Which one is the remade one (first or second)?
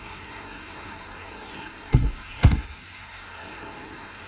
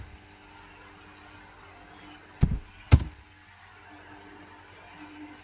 first